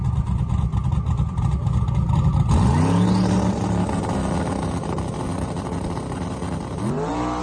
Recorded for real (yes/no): yes